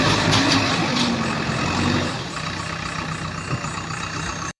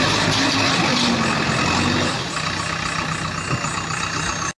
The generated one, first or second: first